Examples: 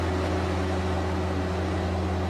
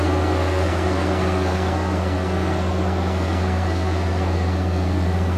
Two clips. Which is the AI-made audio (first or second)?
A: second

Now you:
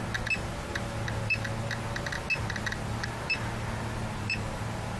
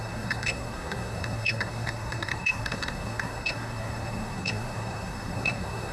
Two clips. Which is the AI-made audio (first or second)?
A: second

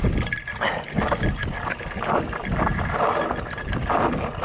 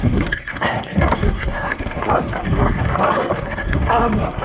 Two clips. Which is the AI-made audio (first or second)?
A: second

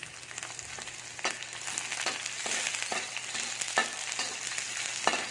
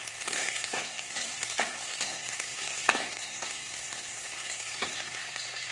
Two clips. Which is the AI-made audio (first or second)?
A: second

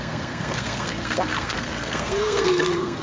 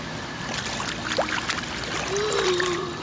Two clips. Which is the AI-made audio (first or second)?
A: first